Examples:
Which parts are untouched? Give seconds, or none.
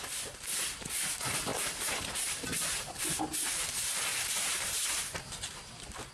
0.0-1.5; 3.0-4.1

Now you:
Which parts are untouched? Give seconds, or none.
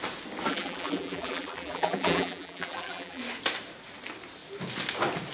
0.0-0.5; 3.2-5.3